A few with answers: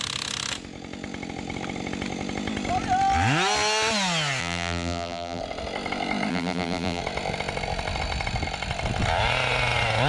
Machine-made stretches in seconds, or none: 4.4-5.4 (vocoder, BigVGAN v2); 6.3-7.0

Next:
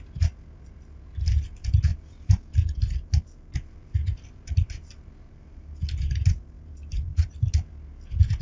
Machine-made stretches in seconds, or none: 1.9-5.8 (vocoder, BigVGAN v2); 7.1-7.7

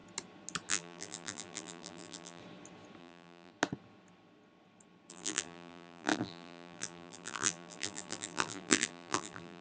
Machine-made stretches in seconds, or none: 0.7-2.4 (vocoder, BigVGAN v2); 3.0-3.5; 5.1-9.6

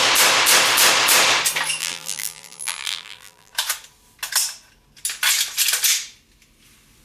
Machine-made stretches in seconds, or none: 1.8-3.5 (vocoder, BigVGAN v2)

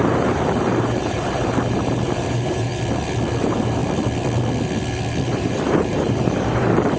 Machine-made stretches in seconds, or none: 0.0-2.7 (vocoder, BigVGAN v2); 3.4-3.8; 5.3-7.0